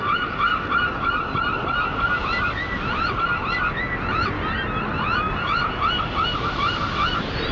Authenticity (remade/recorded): recorded